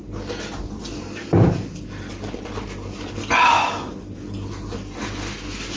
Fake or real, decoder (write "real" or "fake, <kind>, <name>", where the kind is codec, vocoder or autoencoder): real